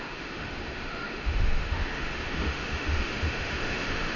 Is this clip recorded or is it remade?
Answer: remade